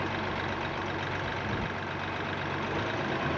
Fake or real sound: real